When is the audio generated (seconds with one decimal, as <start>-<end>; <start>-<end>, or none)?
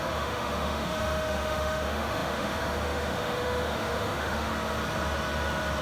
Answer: 0.0-4.5